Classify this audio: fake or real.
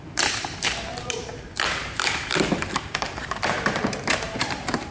fake